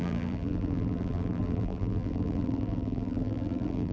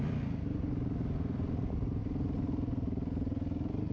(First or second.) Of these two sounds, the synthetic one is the first